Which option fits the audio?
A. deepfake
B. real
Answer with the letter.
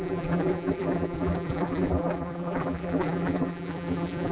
A